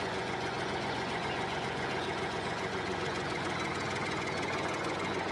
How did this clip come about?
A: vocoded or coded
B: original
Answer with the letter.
A